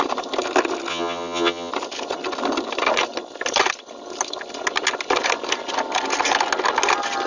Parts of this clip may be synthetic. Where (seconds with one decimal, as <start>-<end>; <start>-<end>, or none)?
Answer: 0.9-1.7